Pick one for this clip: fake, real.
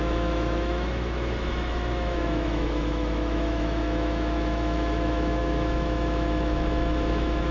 fake